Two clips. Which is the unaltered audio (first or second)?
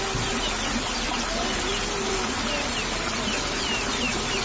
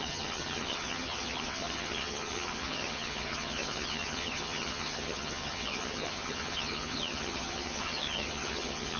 first